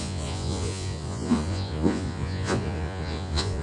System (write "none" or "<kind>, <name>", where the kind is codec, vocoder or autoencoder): vocoder, Vocos